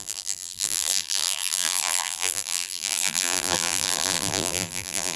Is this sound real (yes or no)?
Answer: no